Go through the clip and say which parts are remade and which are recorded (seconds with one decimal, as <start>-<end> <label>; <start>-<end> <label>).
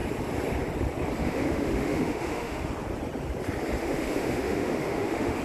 0.0-1.2 recorded; 1.2-2.7 remade; 2.7-3.8 recorded; 3.8-5.4 remade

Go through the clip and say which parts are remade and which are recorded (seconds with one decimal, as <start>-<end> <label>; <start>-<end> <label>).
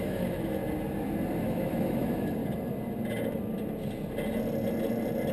0.0-0.6 remade; 0.6-1.3 recorded; 1.3-2.4 remade; 2.4-5.3 recorded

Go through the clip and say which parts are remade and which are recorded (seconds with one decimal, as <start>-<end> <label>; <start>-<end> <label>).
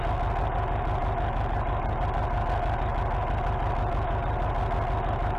0.0-5.4 recorded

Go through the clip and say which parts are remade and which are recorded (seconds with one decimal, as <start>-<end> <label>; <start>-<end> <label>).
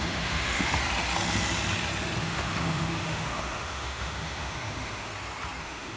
0.0-0.8 remade; 0.8-2.2 recorded; 2.2-5.1 remade; 5.1-5.6 recorded; 5.6-6.0 remade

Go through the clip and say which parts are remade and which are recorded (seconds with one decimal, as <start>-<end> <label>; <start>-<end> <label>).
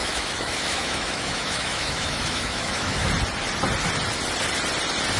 0.0-3.1 remade; 3.1-5.2 recorded